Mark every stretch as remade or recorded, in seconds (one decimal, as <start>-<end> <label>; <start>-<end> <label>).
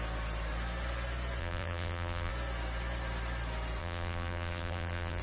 0.0-1.4 recorded; 1.4-2.3 remade; 2.3-3.8 recorded; 3.8-5.2 remade